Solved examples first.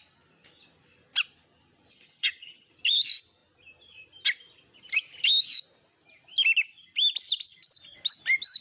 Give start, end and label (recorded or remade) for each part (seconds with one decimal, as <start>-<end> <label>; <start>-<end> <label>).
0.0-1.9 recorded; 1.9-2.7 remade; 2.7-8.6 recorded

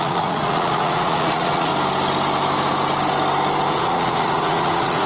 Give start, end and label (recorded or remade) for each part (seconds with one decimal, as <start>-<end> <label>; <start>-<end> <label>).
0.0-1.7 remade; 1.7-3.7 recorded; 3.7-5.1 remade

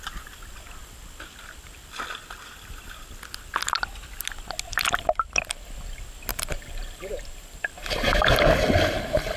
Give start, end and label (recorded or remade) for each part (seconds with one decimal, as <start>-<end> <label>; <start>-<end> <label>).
0.0-6.3 recorded; 6.3-8.2 remade; 8.2-9.4 recorded

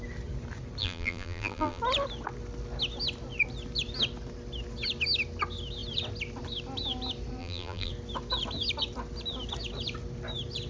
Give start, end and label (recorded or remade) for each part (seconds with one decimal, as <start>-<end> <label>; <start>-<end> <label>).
0.0-0.8 recorded; 0.8-1.8 remade; 1.8-7.4 recorded; 7.4-7.9 remade; 7.9-10.7 recorded